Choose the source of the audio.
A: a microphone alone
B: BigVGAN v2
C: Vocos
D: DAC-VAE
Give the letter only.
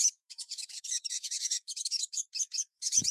D